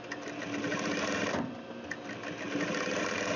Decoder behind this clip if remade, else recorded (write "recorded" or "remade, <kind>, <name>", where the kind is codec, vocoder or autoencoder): recorded